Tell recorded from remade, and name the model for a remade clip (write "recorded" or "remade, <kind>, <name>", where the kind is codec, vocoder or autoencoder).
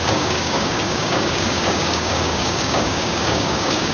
remade, codec, DAC